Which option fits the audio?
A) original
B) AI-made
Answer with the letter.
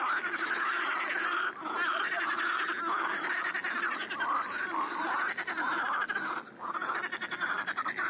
A